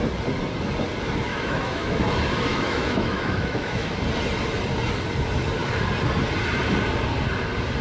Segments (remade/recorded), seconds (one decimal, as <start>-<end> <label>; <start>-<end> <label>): 0.0-1.3 recorded; 1.3-2.0 remade; 2.0-2.5 recorded; 2.5-4.0 remade; 4.0-7.8 recorded